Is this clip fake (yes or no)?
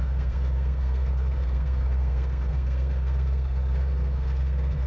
yes